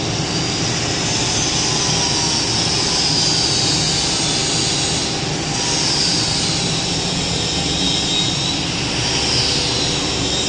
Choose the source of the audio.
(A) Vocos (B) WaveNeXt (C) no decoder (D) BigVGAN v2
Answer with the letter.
C